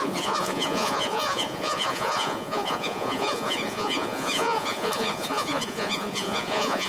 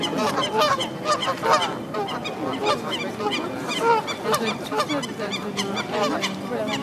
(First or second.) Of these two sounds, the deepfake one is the first